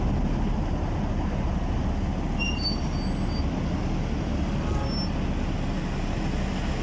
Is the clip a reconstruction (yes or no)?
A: no